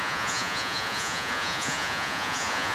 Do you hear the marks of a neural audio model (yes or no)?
yes